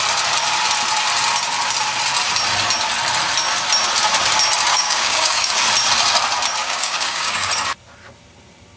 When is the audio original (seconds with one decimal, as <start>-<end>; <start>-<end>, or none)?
0.0-4.7; 5.5-6.6; 7.5-8.8